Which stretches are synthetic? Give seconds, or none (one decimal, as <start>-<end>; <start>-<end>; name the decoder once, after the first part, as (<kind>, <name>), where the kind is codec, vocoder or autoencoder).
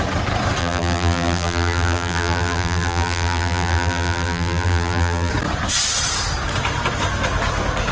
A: 0.6-5.3 (vocoder, BigVGAN v2)